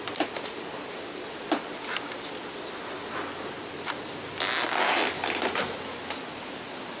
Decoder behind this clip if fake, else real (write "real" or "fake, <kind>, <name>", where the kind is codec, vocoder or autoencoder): real